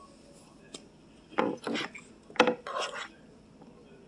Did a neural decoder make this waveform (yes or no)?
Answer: no